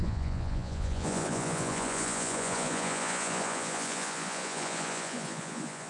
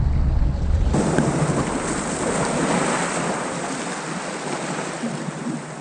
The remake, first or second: first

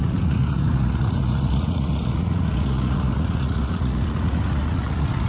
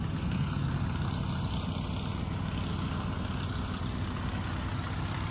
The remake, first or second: first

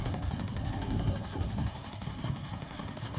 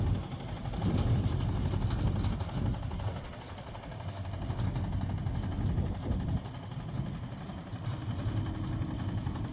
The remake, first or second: first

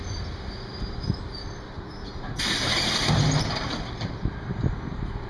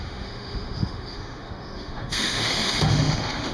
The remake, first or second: second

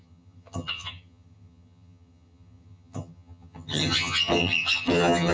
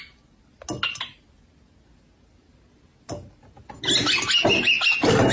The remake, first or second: first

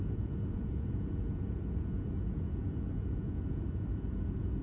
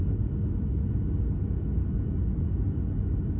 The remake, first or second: first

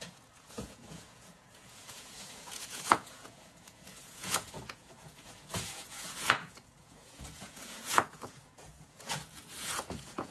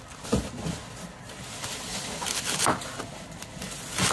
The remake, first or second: first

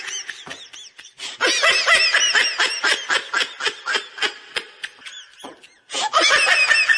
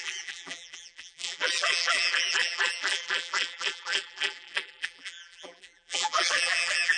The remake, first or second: second